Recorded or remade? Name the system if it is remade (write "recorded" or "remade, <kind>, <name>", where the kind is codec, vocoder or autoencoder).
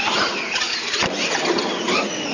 recorded